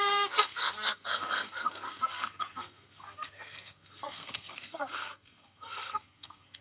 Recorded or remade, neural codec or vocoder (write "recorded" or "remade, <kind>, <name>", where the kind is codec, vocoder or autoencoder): remade, codec, SNAC